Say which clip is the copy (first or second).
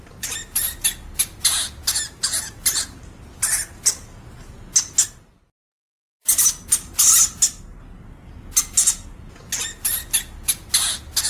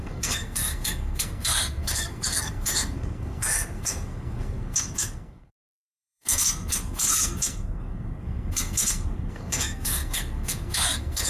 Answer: second